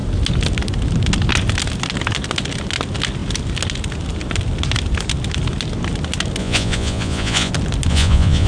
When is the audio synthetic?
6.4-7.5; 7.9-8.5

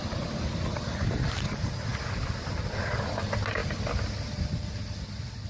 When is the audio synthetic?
none

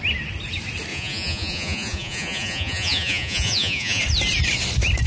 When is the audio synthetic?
0.9-4.0

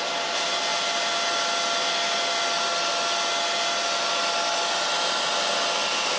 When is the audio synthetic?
none

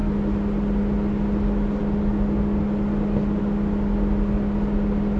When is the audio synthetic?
none

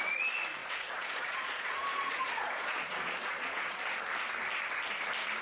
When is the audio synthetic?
0.6-3.8